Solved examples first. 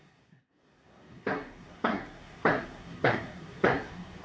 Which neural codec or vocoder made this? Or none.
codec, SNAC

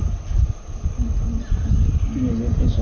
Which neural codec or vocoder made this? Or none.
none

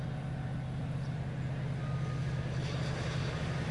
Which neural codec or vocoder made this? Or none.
none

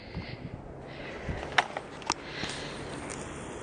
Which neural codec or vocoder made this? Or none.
none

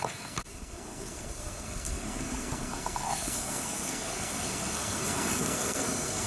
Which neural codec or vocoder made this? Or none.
codec, SNAC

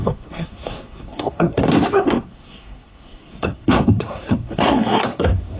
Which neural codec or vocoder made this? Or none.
codec, SNAC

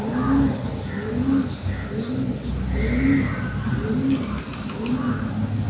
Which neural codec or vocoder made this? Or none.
none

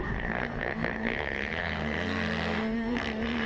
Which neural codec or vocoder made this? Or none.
codec, SNAC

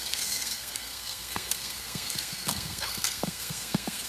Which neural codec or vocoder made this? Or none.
codec, SNAC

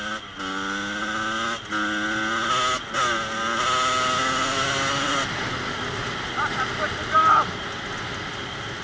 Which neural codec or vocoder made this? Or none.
none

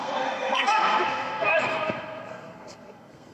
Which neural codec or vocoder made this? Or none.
codec, SNAC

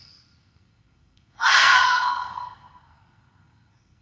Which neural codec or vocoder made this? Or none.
codec, SNAC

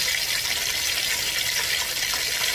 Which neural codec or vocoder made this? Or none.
none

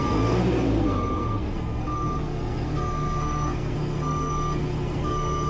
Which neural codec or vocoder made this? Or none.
codec, SNAC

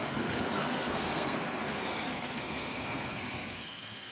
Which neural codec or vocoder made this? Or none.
codec, SNAC